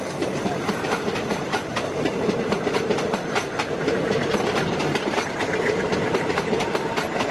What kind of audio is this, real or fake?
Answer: fake